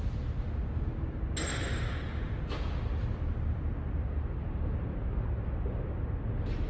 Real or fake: real